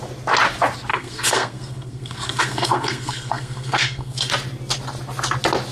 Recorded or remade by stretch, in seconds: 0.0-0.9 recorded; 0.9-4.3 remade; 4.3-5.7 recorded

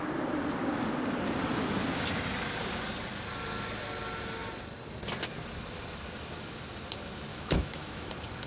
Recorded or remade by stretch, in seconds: 0.0-7.3 recorded; 7.3-8.1 remade; 8.1-8.5 recorded

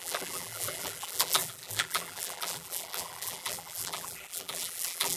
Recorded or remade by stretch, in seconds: 0.0-5.2 remade